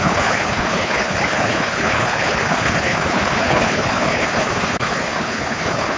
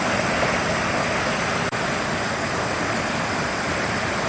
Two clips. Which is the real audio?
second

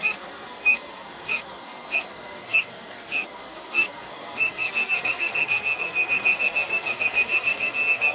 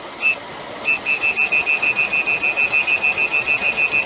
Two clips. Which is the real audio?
second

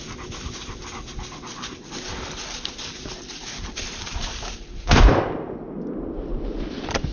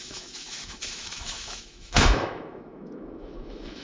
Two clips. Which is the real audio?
first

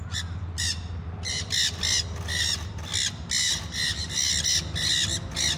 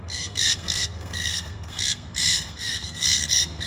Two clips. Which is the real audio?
first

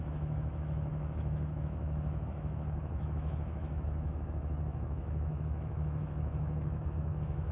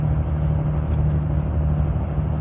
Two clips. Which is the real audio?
second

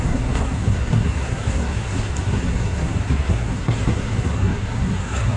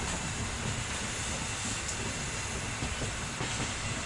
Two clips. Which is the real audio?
second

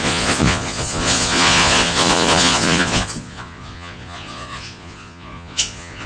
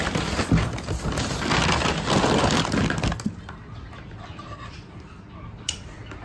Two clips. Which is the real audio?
second